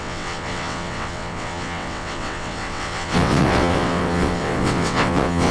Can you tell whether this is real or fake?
fake